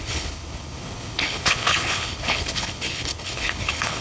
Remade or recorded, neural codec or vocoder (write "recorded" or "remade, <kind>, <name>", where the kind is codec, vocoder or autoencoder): remade, codec, HILCodec